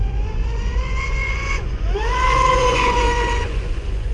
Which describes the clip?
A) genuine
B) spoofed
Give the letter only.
B